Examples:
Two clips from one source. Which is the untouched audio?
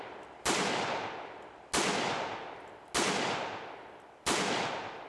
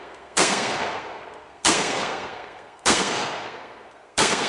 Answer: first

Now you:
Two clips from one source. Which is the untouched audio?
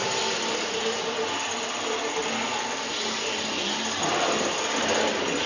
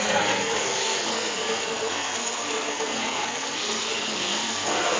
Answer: first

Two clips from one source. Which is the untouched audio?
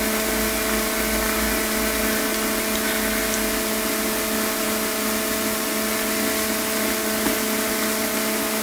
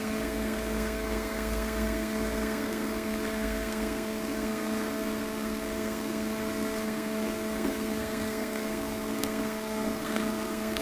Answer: first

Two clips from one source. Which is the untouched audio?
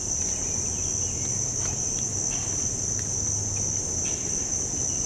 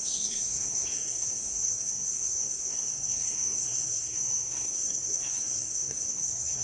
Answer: first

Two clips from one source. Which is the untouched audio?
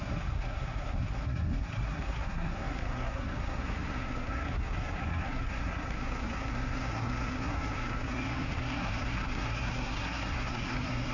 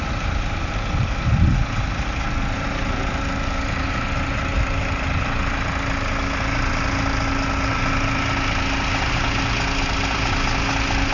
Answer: second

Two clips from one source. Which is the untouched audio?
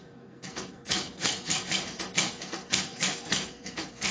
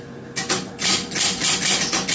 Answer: second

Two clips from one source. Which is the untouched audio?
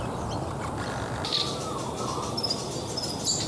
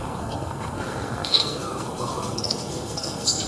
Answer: first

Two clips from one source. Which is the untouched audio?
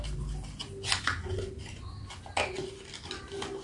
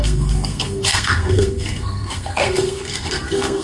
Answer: first